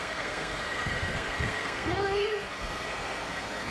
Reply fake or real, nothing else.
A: fake